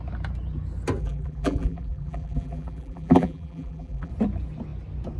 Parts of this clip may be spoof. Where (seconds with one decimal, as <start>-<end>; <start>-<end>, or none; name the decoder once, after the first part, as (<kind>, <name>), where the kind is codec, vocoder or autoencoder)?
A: 1.0-4.1 (vocoder, BigVGAN v2)